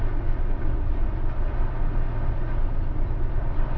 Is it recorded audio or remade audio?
recorded